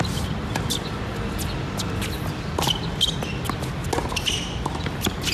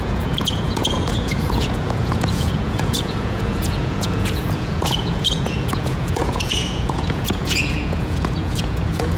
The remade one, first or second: second